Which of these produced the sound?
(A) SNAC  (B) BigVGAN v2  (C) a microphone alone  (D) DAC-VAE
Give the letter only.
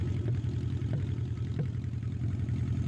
C